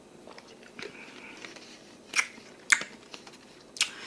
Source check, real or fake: real